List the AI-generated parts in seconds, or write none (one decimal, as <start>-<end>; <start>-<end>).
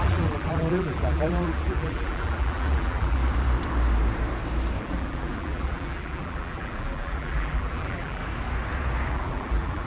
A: 0.0-3.2; 4.8-8.2; 9.1-9.9